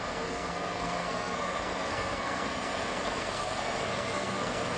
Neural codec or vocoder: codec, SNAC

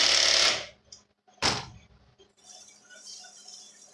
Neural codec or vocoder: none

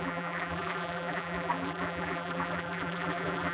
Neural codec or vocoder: vocoder, BigVGAN v2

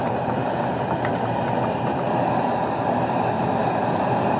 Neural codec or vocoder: none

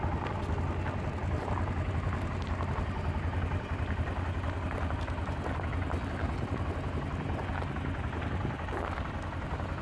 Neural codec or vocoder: none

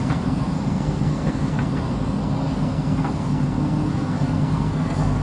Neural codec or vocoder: codec, SNAC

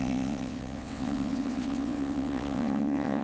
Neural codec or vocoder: vocoder, WaveNeXt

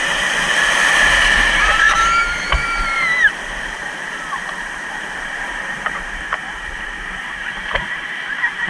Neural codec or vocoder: vocoder, BigVGAN v2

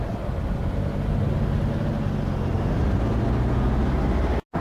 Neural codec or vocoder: none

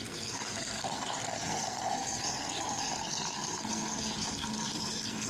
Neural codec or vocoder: codec, SNAC